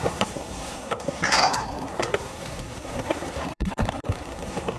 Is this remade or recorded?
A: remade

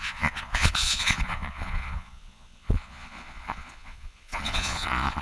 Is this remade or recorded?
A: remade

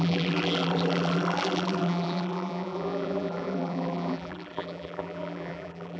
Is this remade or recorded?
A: remade